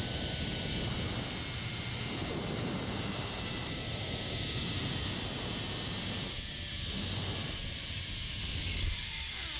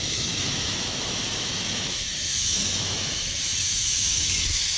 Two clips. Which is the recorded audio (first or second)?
first